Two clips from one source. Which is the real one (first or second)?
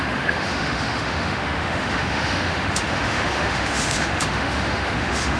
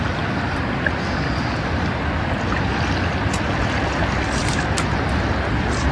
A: second